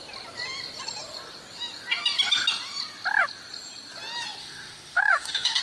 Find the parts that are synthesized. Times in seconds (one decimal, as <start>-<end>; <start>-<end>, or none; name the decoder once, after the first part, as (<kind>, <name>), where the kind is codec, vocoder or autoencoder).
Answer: 4.4-5.6 (autoencoder, DAC-VAE)